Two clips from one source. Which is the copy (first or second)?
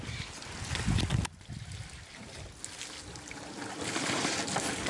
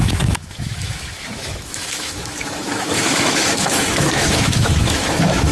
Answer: second